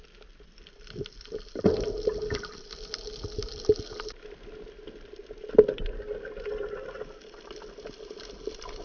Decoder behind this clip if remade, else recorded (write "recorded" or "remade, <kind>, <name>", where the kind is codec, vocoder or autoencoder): recorded